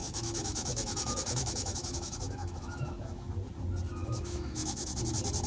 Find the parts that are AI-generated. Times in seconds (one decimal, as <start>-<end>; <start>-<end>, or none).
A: 0.0-3.3; 4.0-5.0